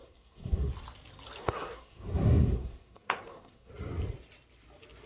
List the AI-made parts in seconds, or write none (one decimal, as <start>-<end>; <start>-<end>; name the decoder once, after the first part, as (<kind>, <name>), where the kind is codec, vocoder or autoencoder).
0.0-0.7 (codec, SNAC); 1.4-3.7